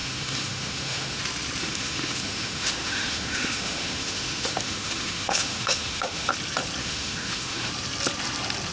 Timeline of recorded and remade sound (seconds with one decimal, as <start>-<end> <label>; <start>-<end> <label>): 0.0-1.2 remade; 1.2-1.6 recorded; 1.6-6.3 remade; 6.3-6.8 recorded; 6.8-7.7 remade; 7.7-8.7 recorded

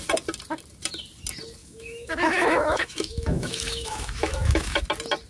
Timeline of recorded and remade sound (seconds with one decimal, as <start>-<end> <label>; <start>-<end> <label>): 0.0-1.6 recorded; 1.6-4.8 remade; 4.8-5.3 recorded

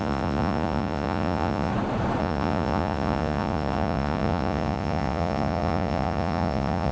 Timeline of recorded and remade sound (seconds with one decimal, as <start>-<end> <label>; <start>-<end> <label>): 0.0-1.7 remade; 1.7-2.2 recorded; 2.2-6.9 remade

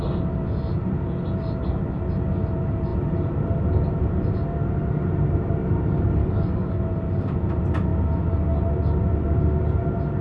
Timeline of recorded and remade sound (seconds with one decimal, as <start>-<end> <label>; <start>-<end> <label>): 0.0-6.2 recorded; 6.2-6.8 remade; 6.8-10.2 recorded

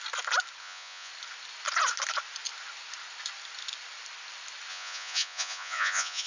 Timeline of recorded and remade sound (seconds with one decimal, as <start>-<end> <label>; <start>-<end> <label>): 0.0-0.6 recorded; 0.6-1.1 remade; 1.1-4.7 recorded; 4.7-6.3 remade